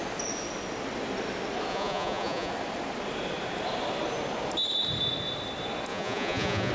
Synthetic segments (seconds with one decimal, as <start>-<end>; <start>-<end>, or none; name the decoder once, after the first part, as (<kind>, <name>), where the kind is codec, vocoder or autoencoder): 1.7-2.5 (vocoder, Vocos); 5.9-6.7